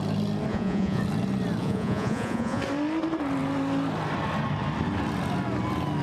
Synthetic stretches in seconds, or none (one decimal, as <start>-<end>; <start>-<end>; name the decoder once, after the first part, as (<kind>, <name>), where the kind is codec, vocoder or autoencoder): 0.5-1.0 (vocoder, Vocos); 1.6-2.6